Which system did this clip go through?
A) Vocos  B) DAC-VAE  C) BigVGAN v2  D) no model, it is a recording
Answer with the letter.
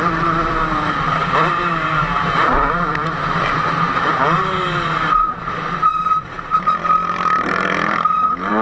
C